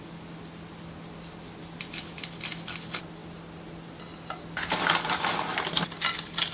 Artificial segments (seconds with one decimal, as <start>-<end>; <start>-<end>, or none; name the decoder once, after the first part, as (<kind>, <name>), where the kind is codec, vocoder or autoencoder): none